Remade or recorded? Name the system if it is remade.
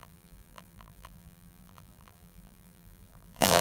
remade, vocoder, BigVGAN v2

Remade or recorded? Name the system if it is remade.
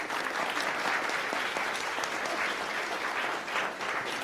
recorded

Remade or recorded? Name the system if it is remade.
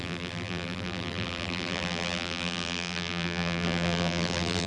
remade, vocoder, BigVGAN v2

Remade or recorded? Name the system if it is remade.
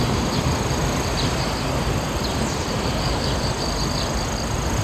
remade, vocoder, BigVGAN v2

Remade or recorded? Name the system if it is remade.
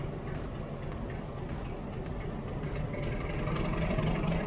recorded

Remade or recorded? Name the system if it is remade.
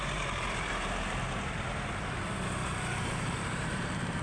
remade, vocoder, BigVGAN v2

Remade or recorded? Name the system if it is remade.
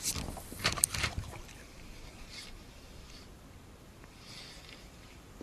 remade, vocoder, BigVGAN v2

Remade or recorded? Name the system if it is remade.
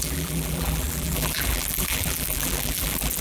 remade, vocoder, BigVGAN v2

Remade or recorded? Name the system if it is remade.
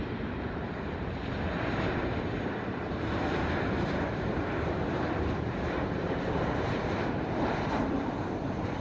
remade, vocoder, BigVGAN v2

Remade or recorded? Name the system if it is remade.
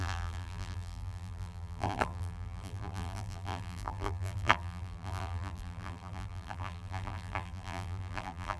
remade, vocoder, BigVGAN v2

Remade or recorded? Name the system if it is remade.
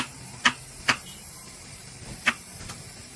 remade, vocoder, BigVGAN v2